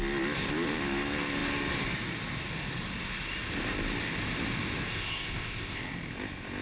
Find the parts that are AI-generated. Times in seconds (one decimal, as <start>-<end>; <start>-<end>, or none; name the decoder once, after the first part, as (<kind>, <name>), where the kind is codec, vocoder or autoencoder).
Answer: 4.9-5.8 (codec, ZipCodec)